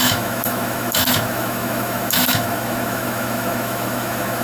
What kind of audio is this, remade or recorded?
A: remade